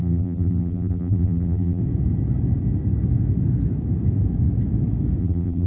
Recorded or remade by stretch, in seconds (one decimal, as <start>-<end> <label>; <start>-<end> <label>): 0.0-1.8 remade; 1.8-5.2 recorded; 5.2-5.7 remade

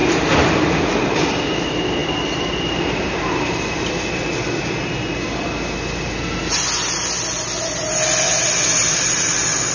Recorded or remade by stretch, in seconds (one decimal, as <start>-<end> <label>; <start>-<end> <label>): 0.0-0.5 remade; 0.5-9.7 recorded

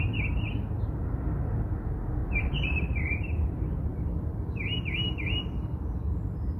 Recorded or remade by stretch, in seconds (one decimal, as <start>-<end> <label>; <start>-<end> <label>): 0.0-2.2 recorded; 2.2-4.1 remade; 4.1-6.6 recorded

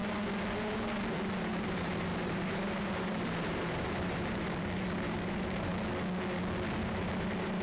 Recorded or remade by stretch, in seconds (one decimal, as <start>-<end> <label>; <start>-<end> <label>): 0.0-1.4 recorded; 1.4-5.7 remade; 5.7-6.8 recorded; 6.8-7.6 remade

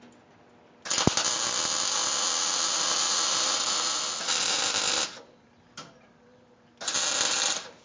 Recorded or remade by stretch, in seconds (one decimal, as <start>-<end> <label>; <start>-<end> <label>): 0.0-2.0 recorded; 2.0-6.7 remade; 6.7-7.8 recorded